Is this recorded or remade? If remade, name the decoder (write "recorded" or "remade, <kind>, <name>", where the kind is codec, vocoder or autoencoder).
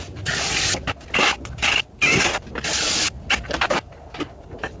recorded